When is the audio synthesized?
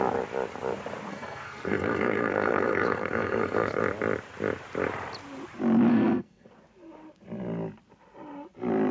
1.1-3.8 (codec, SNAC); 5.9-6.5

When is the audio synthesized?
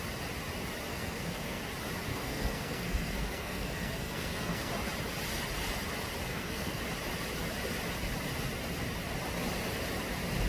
0.9-1.6 (codec, SNAC); 2.1-4.7; 6.3-6.8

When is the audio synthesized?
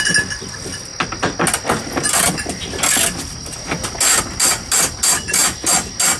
none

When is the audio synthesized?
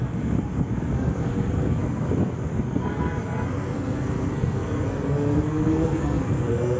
0.0-6.8 (codec, SNAC)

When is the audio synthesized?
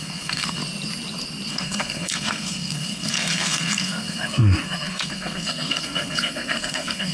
0.0-0.6 (codec, SNAC); 1.5-7.1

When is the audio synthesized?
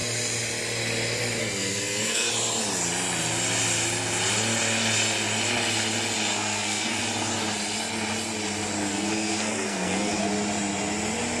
1.4-2.3 (codec, SNAC); 6.3-7.0; 8.9-10.2